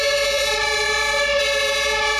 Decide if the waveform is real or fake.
fake